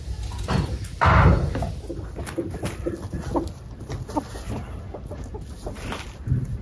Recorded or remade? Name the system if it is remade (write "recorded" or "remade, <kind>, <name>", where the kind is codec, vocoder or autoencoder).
recorded